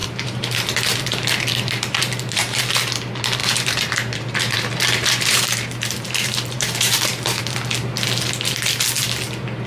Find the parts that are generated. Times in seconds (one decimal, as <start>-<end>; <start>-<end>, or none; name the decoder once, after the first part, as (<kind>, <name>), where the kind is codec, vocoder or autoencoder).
0.0-2.6 (vocoder, BigVGAN v2); 3.4-7.4